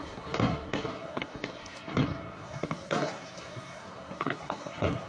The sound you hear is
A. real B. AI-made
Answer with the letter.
B